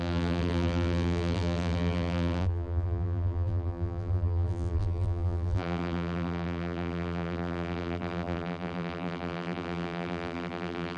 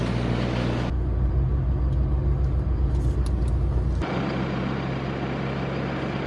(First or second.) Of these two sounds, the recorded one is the second